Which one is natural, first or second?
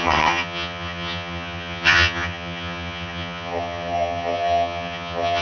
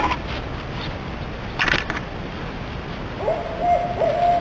second